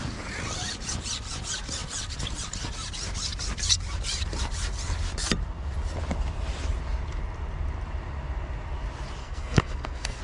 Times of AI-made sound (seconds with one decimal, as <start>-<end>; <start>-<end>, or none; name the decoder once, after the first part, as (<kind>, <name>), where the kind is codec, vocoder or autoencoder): 9.2-10.2 (codec, SNAC)